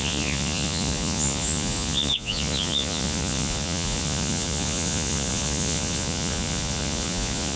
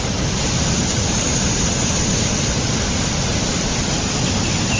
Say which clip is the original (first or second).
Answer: second